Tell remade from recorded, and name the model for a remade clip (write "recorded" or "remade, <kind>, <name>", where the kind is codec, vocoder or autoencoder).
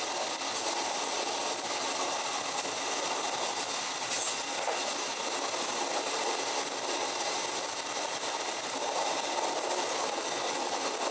recorded